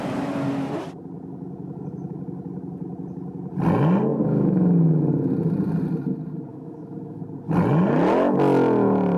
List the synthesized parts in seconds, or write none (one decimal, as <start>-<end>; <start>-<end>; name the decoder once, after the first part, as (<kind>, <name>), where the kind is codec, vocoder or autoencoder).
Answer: 4.1-5.0 (autoencoder, DAC-VAE); 6.5-7.2